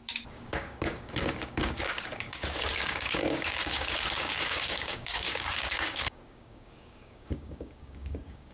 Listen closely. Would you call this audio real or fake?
fake